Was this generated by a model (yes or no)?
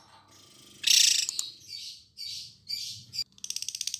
no